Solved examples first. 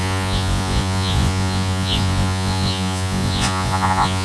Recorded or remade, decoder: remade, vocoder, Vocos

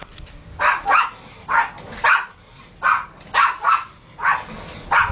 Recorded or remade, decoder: recorded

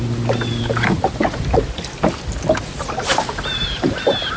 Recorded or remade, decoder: recorded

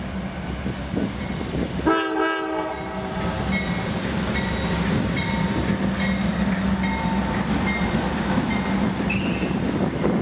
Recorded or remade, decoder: recorded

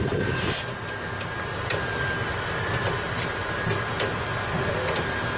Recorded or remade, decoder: recorded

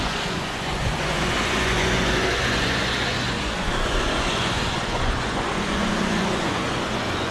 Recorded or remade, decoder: remade, vocoder, Vocos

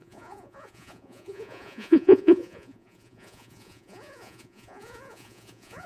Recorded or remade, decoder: remade, vocoder, Vocos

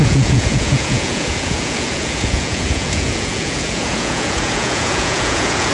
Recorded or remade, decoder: remade, vocoder, Vocos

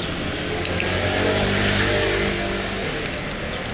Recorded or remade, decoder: recorded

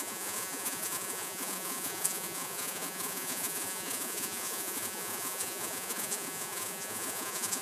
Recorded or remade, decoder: remade, vocoder, Vocos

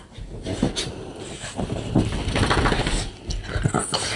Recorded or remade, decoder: recorded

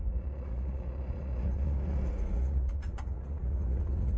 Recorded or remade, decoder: remade, vocoder, Vocos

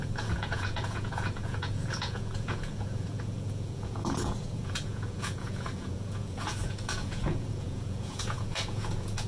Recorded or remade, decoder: remade, vocoder, Vocos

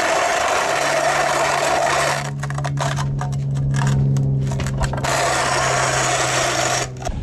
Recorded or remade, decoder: recorded